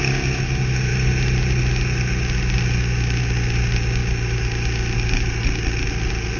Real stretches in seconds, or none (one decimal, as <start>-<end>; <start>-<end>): 0.0-6.4